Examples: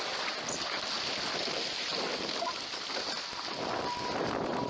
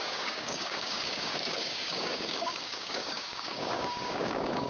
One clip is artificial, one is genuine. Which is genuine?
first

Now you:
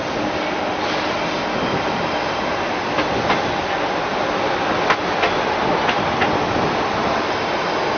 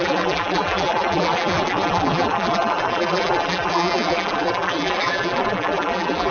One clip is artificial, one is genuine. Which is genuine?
first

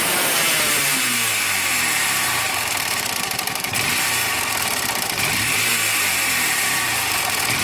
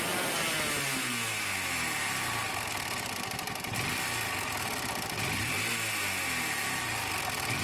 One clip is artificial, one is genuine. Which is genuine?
second